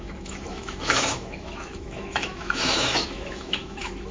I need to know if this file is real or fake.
fake